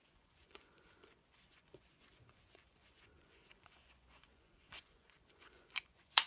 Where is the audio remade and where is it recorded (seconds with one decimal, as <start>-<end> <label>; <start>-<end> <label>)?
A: 0.0-6.3 remade